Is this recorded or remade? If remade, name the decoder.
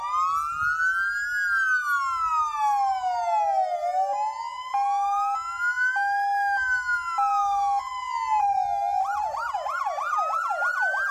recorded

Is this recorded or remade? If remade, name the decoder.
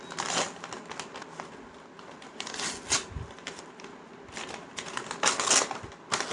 recorded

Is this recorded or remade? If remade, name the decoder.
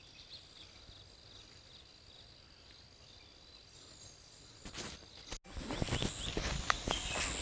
recorded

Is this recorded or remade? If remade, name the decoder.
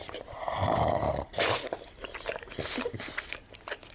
recorded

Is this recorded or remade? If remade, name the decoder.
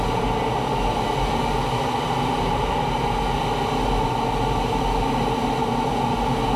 recorded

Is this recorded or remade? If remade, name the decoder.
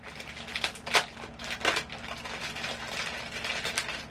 recorded